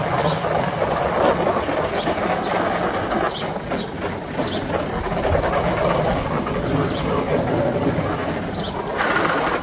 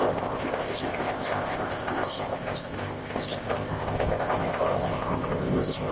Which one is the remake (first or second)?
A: second